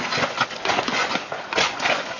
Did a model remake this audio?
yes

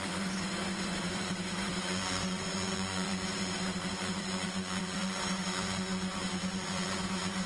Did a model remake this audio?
yes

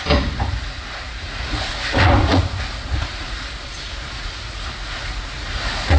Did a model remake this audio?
yes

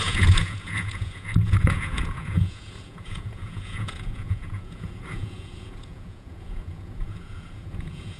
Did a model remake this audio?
yes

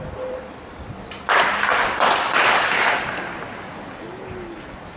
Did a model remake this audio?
no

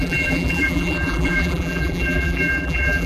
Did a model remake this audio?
yes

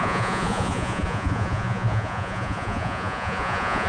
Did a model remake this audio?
yes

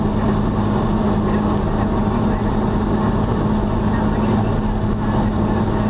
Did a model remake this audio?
no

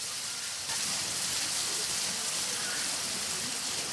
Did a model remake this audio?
yes